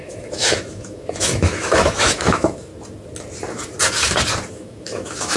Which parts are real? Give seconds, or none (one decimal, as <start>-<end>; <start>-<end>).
2.7-4.5